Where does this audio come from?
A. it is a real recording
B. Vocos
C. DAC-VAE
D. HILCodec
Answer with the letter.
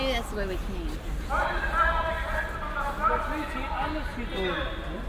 A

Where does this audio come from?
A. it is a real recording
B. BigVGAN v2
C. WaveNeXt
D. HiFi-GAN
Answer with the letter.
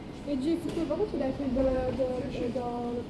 B